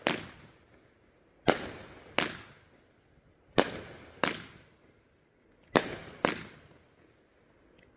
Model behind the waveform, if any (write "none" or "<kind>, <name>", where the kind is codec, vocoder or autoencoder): none